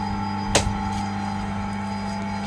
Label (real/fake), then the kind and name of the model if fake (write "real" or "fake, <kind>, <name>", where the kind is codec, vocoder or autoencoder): real